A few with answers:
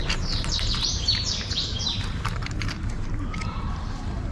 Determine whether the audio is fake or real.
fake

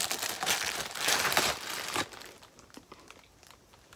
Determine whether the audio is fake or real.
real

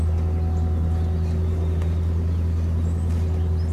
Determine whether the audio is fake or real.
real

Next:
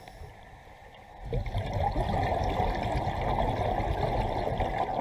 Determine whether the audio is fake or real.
real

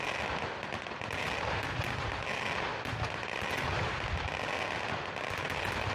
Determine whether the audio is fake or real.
real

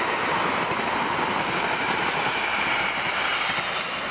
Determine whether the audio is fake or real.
real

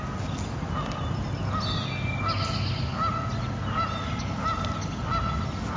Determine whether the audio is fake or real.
real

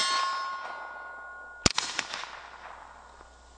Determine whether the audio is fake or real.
real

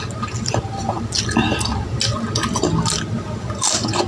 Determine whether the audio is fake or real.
real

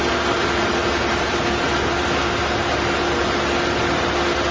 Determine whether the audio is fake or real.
real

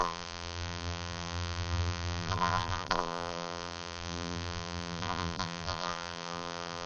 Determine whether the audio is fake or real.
fake